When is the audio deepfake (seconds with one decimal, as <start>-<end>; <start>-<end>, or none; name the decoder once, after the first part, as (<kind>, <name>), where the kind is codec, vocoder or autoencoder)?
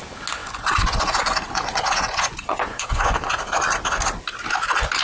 0.4-3.4 (vocoder, Vocos)